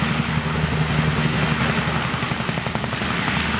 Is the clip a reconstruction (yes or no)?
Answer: no